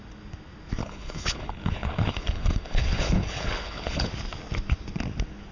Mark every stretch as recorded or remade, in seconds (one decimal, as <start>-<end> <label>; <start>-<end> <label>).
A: 0.0-0.8 recorded; 0.8-4.1 remade; 4.1-5.5 recorded